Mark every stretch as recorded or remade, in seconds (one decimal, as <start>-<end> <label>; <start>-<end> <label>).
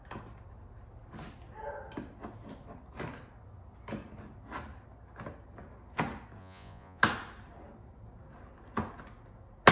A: 0.0-6.4 recorded; 6.4-7.0 remade; 7.0-9.7 recorded